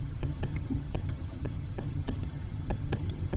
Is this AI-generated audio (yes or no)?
yes